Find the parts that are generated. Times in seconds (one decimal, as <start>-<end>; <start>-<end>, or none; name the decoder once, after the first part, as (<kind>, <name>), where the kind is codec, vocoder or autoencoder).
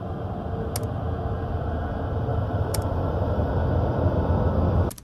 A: 2.3-3.5 (vocoder, BigVGAN v2)